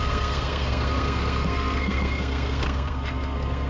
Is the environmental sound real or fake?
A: fake